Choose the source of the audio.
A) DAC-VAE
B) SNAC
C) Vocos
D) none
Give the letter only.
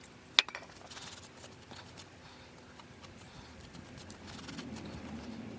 D